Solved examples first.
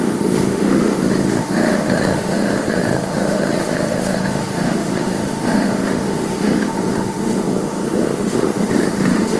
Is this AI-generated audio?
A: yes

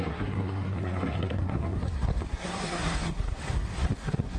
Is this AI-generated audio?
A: yes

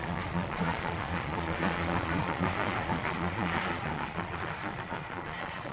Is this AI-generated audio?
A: yes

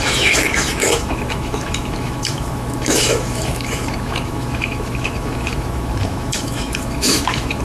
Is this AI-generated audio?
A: yes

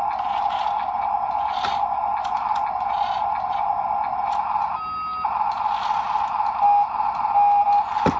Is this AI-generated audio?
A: no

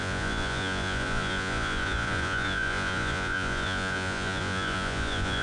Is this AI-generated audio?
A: yes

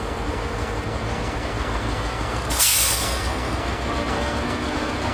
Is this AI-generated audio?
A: yes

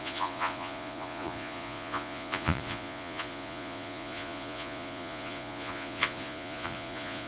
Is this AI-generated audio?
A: yes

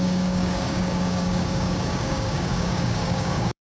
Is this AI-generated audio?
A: yes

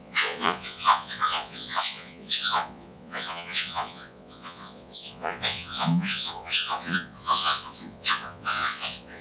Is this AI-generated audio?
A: yes